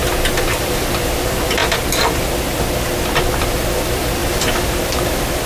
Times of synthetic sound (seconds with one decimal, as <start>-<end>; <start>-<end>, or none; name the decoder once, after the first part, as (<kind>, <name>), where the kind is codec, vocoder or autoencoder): 4.2-4.7 (vocoder, BigVGAN v2)